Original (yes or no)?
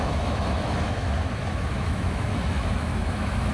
no